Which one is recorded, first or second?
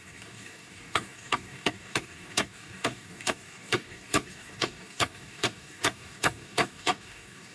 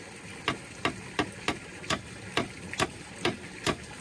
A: second